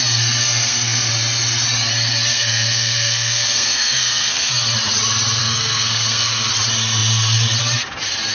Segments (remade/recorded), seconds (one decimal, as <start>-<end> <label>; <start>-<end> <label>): 0.0-0.4 recorded; 0.4-1.1 remade; 1.1-2.3 recorded; 2.3-4.5 remade; 4.5-5.4 recorded; 5.4-6.5 remade; 6.5-8.3 recorded